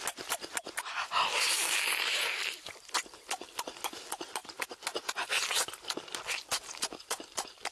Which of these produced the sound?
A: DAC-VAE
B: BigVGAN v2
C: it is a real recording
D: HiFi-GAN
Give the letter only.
C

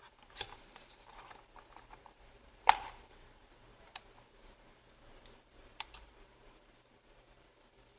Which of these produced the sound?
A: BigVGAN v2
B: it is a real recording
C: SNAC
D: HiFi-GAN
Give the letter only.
A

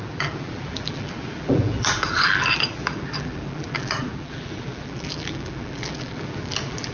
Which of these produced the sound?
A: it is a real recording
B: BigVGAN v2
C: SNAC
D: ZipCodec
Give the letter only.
B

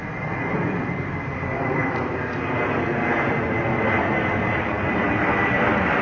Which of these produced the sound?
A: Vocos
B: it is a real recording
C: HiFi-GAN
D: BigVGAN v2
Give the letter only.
D